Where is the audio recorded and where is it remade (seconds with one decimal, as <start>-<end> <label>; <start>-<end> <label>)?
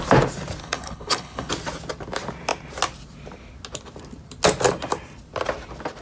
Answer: 0.0-0.6 recorded; 0.6-1.5 remade; 1.5-6.0 recorded